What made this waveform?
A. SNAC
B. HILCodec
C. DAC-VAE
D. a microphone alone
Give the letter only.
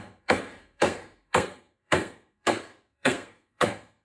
A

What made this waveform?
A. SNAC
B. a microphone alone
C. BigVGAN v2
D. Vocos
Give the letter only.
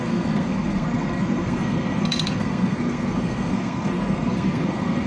A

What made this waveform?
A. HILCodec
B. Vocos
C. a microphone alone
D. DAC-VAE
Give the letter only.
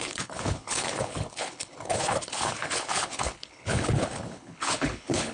A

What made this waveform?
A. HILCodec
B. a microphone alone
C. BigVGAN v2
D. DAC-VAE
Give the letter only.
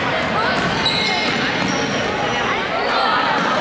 B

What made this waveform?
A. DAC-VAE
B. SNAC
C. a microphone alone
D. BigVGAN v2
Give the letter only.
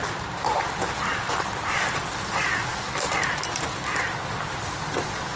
C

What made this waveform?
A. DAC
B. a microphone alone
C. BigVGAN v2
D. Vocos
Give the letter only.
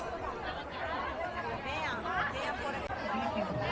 B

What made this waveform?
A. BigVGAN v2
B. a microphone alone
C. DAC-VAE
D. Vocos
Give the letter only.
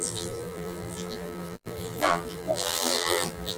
A